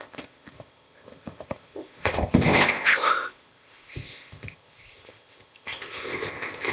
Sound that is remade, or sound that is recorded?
remade